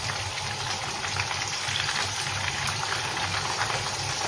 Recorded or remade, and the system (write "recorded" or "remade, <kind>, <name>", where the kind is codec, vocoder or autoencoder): recorded